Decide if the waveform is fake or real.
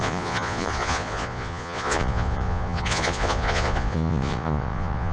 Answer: fake